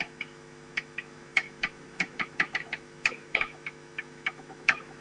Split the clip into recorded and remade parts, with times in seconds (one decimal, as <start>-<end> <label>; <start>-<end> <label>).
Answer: 0.0-5.0 remade